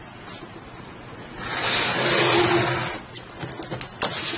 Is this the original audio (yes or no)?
yes